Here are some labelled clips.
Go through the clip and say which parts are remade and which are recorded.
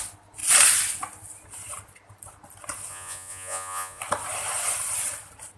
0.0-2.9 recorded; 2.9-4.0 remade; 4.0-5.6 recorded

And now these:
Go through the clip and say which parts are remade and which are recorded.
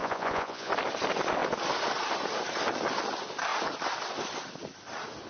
0.0-0.7 remade; 0.7-5.3 recorded